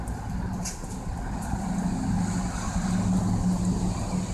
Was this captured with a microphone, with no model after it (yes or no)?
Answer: yes